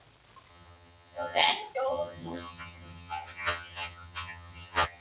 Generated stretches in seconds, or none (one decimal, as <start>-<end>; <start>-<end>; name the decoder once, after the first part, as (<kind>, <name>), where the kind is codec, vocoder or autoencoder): 0.5-1.5 (vocoder, HiFi-GAN); 1.9-5.0